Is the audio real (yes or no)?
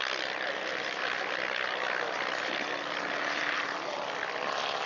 no